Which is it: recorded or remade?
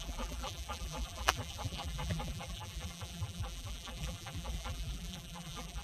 remade